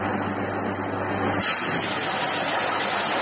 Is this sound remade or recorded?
recorded